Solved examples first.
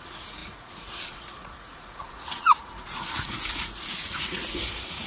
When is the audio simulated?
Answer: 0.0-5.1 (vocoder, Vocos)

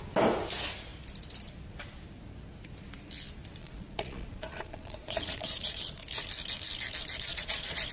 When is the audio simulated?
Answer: 3.6-6.0 (vocoder, Vocos); 7.3-7.9